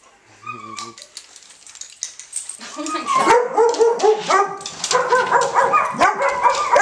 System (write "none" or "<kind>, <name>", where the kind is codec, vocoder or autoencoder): none